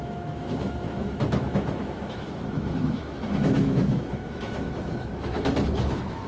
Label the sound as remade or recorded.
remade